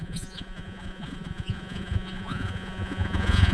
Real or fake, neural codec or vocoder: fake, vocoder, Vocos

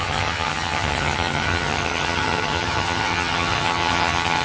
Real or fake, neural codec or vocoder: fake, vocoder, HiFi-GAN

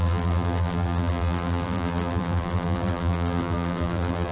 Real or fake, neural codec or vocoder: fake, vocoder, BigVGAN v2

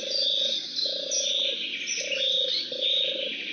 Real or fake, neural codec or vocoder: real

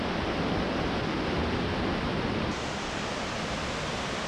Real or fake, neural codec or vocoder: real